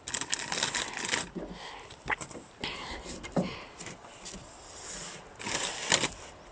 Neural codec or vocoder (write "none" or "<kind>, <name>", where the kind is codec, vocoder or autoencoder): none